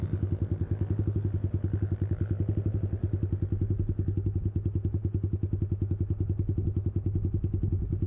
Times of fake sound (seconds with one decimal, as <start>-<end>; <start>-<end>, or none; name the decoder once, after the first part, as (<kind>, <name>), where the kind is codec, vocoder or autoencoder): none